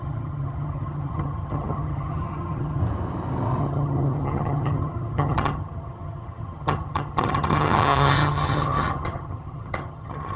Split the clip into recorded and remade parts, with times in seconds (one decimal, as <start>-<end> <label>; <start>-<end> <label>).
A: 0.0-2.8 remade; 2.8-3.6 recorded; 3.6-10.4 remade